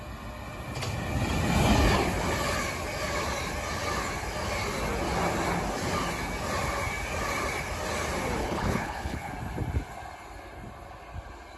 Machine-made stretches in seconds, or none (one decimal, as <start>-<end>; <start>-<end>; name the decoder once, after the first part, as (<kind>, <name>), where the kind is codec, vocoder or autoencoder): 8.4-9.3 (codec, HILCodec)